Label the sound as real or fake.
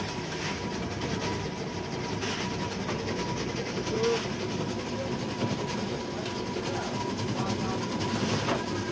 real